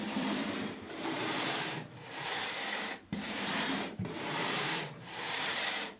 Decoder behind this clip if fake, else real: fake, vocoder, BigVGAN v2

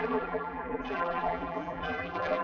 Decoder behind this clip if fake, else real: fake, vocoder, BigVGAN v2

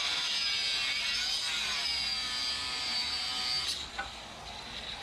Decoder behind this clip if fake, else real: real